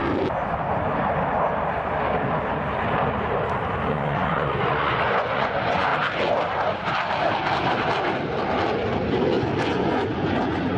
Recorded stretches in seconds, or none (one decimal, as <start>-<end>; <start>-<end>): 0.0-3.9; 5.9-9.6